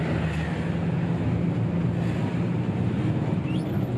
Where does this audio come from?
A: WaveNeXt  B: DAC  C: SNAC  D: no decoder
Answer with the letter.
D